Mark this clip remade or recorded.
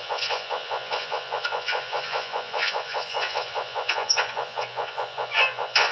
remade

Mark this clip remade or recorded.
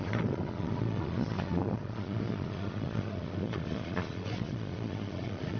remade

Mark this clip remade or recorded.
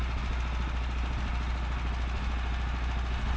recorded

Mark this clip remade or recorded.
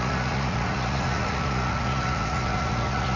remade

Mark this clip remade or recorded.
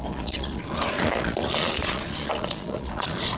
remade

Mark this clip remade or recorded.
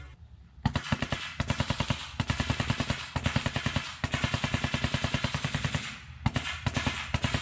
recorded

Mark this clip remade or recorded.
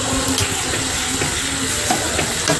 recorded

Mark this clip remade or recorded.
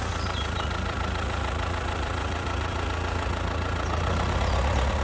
remade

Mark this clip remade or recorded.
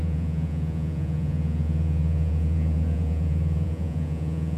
remade